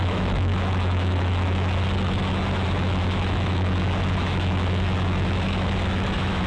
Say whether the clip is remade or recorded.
remade